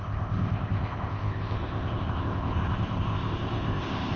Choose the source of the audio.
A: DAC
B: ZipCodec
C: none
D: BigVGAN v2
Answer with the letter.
B